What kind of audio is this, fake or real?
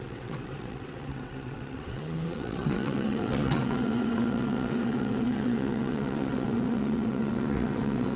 fake